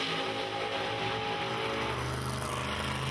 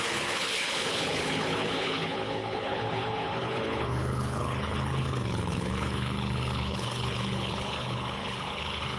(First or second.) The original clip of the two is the first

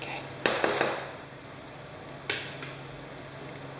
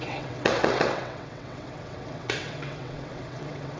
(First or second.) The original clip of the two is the first